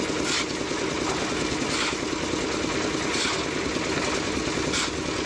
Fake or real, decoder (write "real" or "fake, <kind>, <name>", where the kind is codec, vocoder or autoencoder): real